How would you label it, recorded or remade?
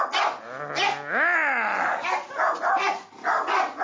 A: recorded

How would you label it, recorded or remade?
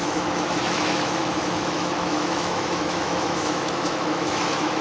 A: remade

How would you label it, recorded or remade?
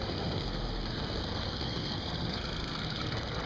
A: remade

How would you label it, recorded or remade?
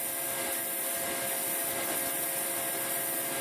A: recorded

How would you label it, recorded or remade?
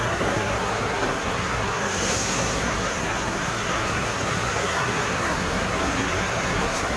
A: remade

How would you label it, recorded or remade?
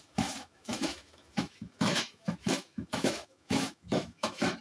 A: remade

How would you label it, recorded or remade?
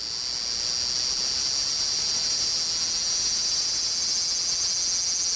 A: recorded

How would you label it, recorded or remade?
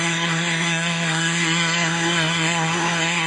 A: remade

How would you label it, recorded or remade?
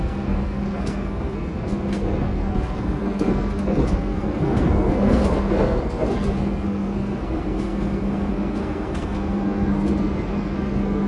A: remade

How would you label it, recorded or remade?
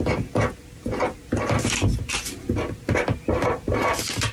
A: recorded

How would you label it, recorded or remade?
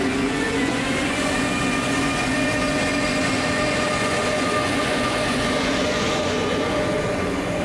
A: remade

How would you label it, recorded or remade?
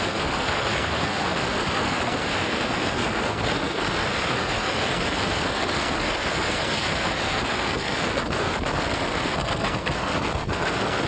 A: remade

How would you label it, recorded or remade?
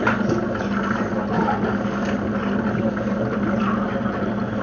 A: recorded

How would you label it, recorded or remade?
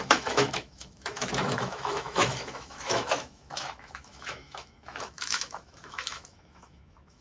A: remade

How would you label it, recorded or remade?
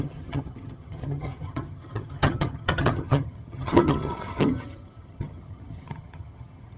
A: remade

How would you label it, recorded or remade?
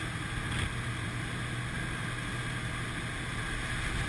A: recorded